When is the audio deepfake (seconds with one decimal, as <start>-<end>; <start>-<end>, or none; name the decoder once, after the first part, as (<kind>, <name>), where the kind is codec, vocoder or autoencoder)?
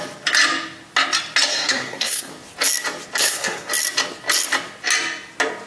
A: 1.5-2.3 (codec, SNAC); 3.2-3.7